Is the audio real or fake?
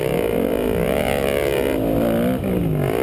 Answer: real